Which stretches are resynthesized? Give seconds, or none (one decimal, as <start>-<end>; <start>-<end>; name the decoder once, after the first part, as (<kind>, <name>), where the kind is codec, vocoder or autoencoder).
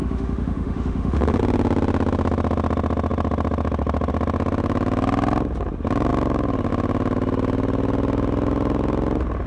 0.0-1.4 (autoencoder, DAC-VAE)